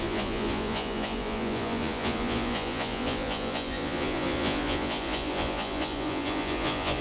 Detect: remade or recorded remade